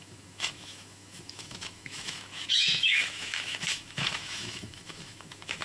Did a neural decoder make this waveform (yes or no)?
yes